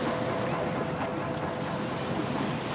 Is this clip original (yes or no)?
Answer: yes